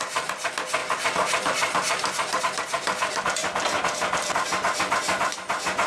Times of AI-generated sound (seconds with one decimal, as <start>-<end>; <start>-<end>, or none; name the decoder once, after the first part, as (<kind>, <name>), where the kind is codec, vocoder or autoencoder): none